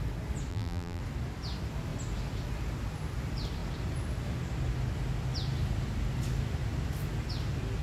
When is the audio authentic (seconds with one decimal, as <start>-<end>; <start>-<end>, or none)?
0.0-0.5; 1.0-7.8